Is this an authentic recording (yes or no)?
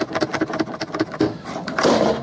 no